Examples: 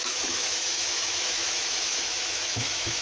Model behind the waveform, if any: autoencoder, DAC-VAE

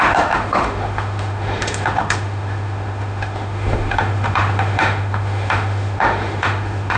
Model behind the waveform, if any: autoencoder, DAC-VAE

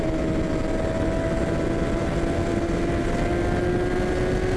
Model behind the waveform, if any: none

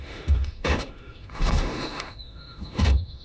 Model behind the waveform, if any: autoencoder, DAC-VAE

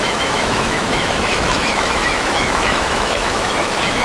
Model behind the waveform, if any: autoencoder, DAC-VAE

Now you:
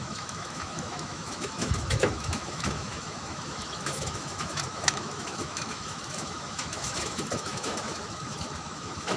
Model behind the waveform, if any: autoencoder, DAC-VAE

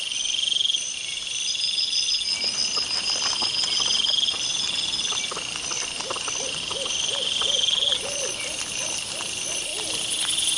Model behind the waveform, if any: none